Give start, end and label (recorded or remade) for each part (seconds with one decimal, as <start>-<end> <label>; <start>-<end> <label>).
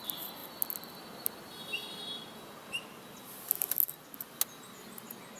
0.0-5.4 recorded